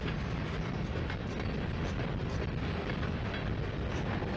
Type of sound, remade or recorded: recorded